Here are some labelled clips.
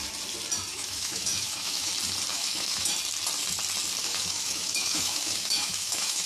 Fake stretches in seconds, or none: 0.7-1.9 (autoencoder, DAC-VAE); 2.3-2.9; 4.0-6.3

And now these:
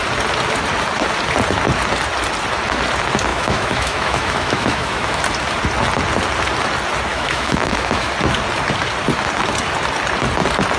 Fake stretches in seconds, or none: 3.3-5.2 (autoencoder, DAC-VAE); 7.1-8.1

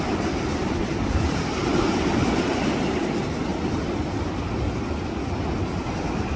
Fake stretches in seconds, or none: none

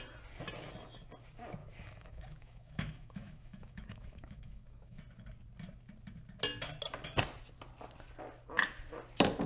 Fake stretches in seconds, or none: 1.6-5.0 (autoencoder, DAC-VAE)

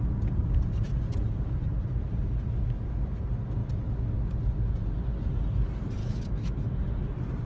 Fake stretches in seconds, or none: 6.0-6.7 (autoencoder, DAC-VAE)

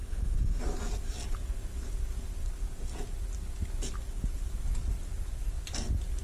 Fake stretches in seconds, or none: 0.0-0.6 (autoencoder, DAC-VAE)

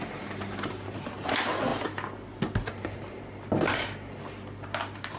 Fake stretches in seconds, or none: none

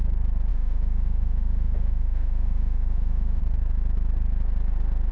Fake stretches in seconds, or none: 0.5-3.4 (autoencoder, DAC-VAE)